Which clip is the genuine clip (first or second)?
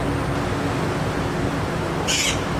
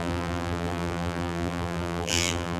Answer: first